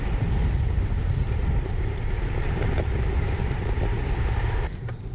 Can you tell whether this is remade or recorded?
remade